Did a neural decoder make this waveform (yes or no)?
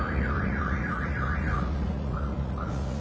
yes